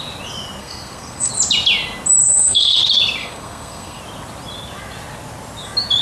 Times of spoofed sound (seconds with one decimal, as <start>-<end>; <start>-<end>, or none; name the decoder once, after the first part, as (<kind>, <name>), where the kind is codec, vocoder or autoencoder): 0.6-1.3 (codec, SNAC); 2.2-2.8; 3.2-4.0